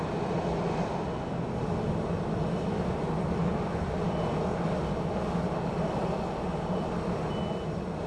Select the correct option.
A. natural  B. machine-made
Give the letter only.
A